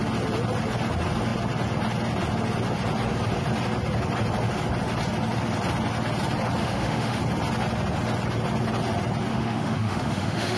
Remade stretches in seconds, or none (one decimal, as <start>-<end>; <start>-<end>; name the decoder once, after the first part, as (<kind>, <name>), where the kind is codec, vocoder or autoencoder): 6.6-7.2 (autoencoder, DAC-VAE); 9.3-10.6